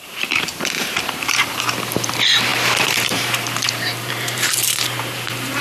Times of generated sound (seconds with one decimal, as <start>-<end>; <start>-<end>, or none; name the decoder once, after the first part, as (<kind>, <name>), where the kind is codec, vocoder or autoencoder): 0.0-5.6 (vocoder, BigVGAN v2)